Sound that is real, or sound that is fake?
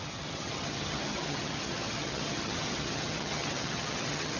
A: fake